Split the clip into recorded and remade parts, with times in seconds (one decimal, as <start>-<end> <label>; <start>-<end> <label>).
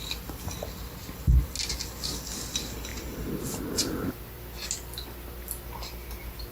0.0-2.9 recorded; 2.9-4.1 remade; 4.1-6.5 recorded